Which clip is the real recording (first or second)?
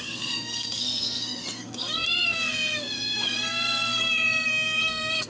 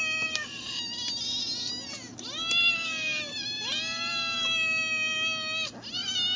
second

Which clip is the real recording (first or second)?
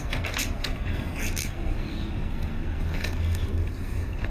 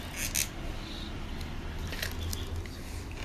second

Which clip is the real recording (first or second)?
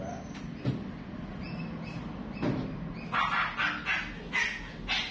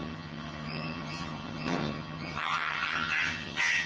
first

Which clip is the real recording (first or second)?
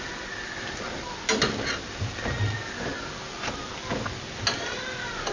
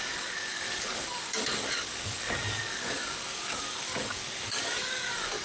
first